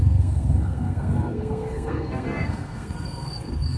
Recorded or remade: remade